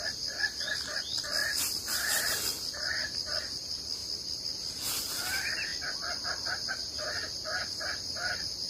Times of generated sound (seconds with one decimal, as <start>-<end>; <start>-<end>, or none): none